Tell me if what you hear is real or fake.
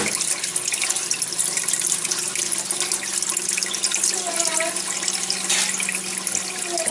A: real